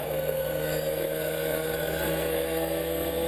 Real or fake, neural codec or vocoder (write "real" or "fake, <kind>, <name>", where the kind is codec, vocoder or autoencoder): fake, codec, SNAC